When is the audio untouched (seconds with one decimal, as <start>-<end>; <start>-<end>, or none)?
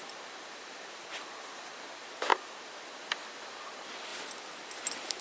0.0-5.2